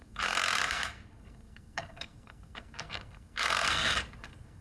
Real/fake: fake